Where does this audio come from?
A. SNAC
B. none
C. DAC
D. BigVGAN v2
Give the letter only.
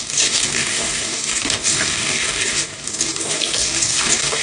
C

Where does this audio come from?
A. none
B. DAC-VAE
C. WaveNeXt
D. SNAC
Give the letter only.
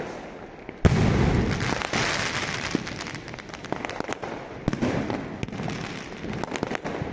A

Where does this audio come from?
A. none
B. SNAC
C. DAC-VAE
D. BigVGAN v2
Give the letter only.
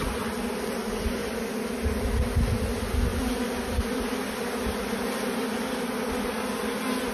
A